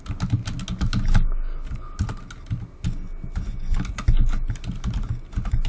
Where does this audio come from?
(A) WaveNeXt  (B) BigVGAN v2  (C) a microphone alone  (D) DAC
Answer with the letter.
C